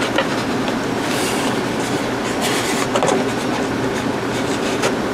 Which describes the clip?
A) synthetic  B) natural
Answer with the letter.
B